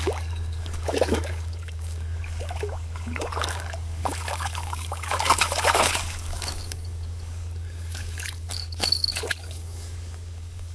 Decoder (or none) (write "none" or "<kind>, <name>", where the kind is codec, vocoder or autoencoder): codec, DAC